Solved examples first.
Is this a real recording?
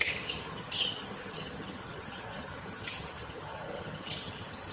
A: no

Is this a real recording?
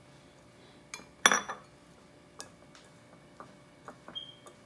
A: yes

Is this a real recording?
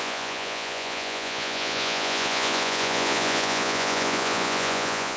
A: no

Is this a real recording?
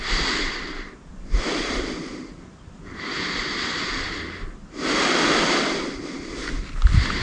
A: no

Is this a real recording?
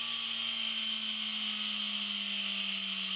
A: yes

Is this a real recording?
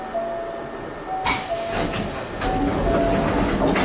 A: yes